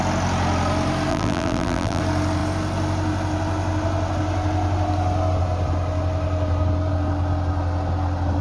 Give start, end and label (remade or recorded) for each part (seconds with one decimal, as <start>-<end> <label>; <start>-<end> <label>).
0.0-1.1 recorded; 1.1-2.0 remade; 2.0-8.4 recorded